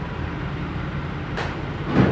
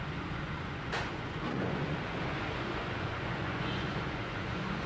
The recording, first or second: first